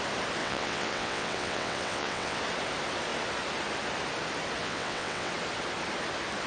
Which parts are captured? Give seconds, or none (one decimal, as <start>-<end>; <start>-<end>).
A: 0.0-0.4; 2.4-4.6; 5.3-6.5